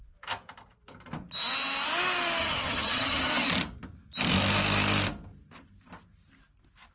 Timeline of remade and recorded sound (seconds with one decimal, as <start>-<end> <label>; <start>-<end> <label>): 0.0-2.4 recorded; 2.4-3.3 remade; 3.3-6.9 recorded